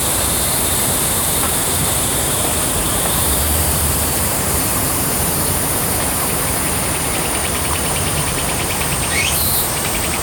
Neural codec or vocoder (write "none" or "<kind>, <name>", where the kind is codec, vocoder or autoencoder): vocoder, BigVGAN v2